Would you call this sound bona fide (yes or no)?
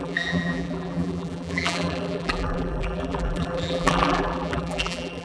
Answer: no